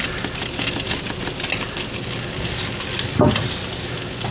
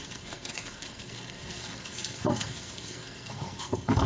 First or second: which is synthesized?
second